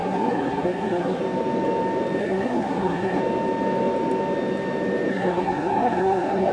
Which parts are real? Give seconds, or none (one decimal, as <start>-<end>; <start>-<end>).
1.2-2.2; 3.2-5.1